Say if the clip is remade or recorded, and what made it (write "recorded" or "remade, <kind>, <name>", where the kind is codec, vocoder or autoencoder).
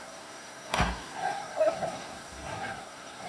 remade, codec, SNAC